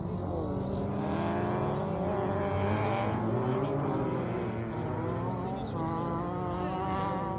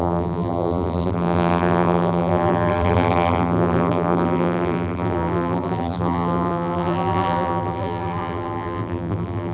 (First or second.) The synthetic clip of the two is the second